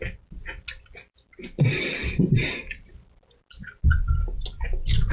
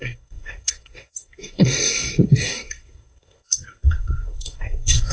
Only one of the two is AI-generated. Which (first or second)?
second